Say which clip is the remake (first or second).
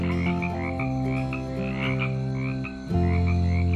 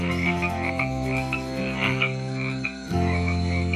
second